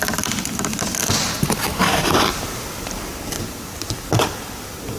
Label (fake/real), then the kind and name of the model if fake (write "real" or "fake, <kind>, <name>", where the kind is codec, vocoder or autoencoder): real